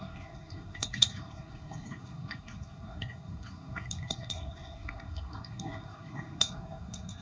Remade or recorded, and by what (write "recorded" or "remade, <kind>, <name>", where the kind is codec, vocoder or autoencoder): remade, codec, SNAC